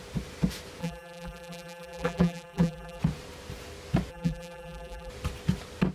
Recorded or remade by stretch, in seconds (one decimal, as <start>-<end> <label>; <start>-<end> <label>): 0.0-0.8 recorded; 0.8-3.0 remade; 3.0-4.1 recorded; 4.1-5.1 remade; 5.1-5.9 recorded